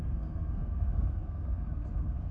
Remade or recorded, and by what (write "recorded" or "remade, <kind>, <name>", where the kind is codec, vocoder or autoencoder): remade, codec, SNAC